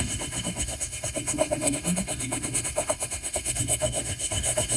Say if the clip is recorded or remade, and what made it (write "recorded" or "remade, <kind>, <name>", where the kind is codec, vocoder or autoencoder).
remade, autoencoder, DAC-VAE